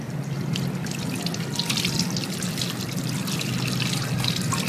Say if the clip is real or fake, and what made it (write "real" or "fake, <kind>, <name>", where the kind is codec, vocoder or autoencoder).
real